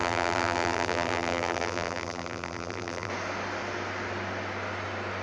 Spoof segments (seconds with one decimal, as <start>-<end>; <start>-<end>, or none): 0.0-3.1